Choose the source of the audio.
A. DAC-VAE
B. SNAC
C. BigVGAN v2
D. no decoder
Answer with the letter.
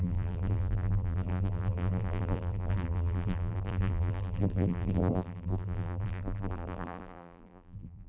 C